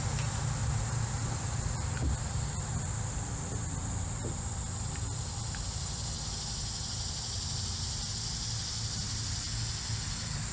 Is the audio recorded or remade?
recorded